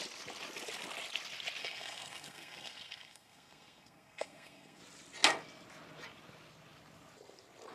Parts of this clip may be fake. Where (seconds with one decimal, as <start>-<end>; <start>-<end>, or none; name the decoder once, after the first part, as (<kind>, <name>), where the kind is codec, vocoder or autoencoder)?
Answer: 1.6-4.8 (codec, SNAC)